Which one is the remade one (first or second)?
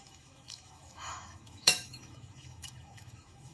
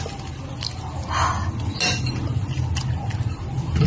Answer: first